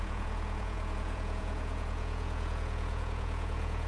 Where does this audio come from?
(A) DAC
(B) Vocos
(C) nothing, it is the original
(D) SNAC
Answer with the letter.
B